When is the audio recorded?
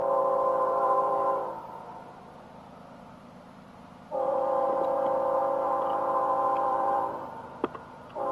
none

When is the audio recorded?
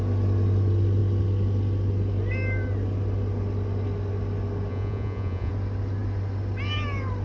0.0-4.7; 5.5-7.2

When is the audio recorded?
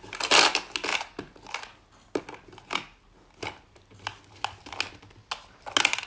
0.0-6.1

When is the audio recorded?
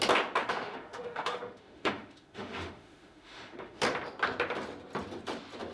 0.0-0.4; 3.8-5.7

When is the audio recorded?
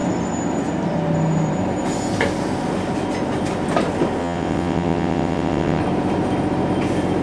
0.0-4.2; 5.8-7.2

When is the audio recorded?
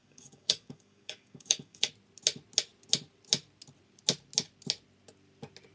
1.9-5.7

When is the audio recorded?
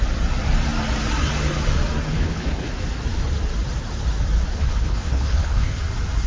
0.0-2.1; 2.7-4.5; 5.8-6.3